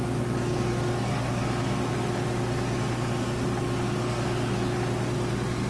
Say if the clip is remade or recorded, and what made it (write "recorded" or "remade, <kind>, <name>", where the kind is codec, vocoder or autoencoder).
recorded